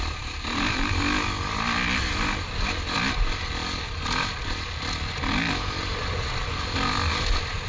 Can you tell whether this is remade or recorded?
recorded